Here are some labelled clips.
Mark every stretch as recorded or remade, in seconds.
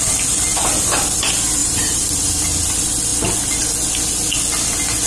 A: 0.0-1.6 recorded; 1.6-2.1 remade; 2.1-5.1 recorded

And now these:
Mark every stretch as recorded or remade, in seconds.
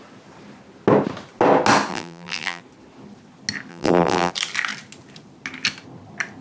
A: 0.0-1.9 recorded; 1.9-2.6 remade; 2.6-3.7 recorded; 3.7-4.3 remade; 4.3-6.4 recorded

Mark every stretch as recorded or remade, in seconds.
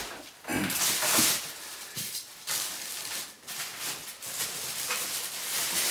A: 0.0-5.9 recorded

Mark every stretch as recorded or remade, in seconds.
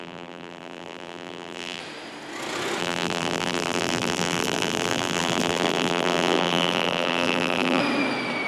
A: 0.0-1.8 remade; 1.8-2.8 recorded; 2.8-7.8 remade; 7.8-8.5 recorded